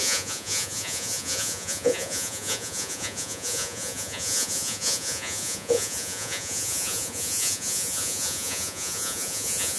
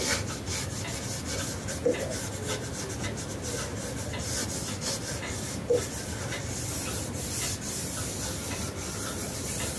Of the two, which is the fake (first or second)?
first